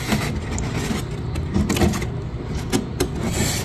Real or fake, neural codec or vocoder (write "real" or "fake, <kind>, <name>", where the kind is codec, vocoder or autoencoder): real